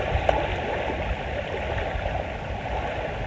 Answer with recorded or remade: recorded